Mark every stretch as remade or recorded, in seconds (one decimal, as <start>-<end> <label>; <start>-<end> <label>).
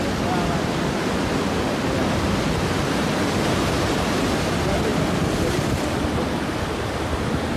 0.0-7.6 recorded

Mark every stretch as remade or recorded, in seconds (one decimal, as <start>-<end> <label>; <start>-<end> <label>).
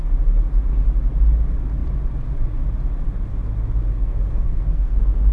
0.0-3.9 recorded; 3.9-5.3 remade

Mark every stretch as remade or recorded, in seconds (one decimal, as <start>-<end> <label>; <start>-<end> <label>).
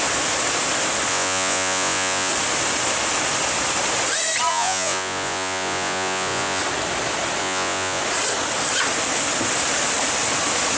0.0-1.1 recorded; 1.1-2.3 remade; 2.3-4.5 recorded; 4.5-6.6 remade; 6.6-7.4 recorded; 7.4-8.0 remade; 8.0-10.8 recorded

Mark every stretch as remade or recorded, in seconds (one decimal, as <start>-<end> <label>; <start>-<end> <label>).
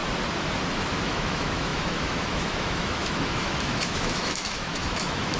0.0-1.0 recorded; 1.0-5.4 remade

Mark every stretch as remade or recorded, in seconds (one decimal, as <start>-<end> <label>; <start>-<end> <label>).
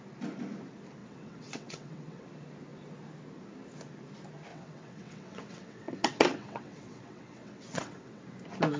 0.0-1.0 recorded; 1.0-2.3 remade; 2.3-4.5 recorded; 4.5-8.2 remade; 8.2-8.8 recorded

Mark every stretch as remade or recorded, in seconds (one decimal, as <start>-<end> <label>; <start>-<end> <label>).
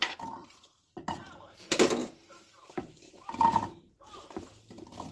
0.0-0.4 recorded; 0.4-1.6 remade; 1.6-2.0 recorded; 2.0-4.3 remade; 4.3-5.1 recorded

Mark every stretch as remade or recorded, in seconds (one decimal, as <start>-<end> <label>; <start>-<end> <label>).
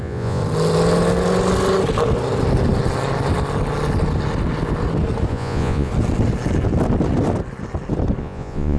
0.0-0.4 remade; 0.4-5.3 recorded; 5.3-5.9 remade; 5.9-8.2 recorded; 8.2-8.8 remade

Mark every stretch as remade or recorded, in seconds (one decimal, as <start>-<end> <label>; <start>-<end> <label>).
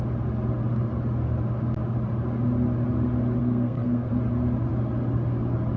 0.0-3.4 recorded; 3.4-4.1 remade; 4.1-5.8 recorded